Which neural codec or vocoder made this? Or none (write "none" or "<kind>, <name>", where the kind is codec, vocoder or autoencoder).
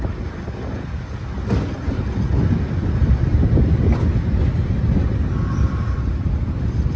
none